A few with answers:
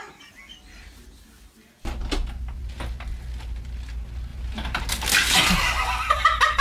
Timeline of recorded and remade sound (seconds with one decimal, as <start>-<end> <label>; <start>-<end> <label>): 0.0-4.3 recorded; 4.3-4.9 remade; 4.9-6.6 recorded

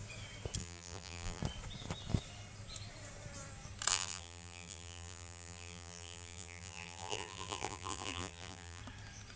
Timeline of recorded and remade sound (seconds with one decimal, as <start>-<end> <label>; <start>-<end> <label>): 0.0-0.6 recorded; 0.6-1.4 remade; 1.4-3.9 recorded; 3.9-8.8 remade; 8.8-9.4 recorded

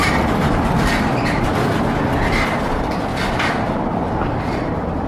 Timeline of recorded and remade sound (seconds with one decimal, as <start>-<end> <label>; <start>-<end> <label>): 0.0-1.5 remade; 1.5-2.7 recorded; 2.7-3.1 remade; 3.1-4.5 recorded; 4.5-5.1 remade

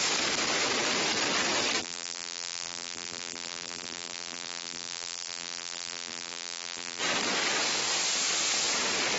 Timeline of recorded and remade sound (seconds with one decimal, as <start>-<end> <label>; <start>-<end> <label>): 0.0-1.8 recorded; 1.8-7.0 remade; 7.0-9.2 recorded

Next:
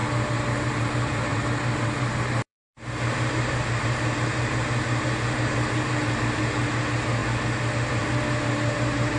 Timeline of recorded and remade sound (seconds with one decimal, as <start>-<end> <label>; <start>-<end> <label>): 0.0-7.2 remade; 7.2-7.7 recorded; 7.7-9.2 remade

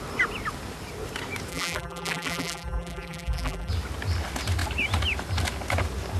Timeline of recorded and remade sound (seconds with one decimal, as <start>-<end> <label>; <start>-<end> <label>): 0.0-1.5 recorded; 1.5-3.7 remade; 3.7-6.2 recorded

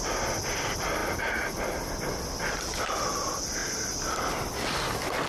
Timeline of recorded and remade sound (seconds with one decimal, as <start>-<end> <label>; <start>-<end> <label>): 0.0-1.0 recorded; 1.0-2.6 remade; 2.6-5.3 recorded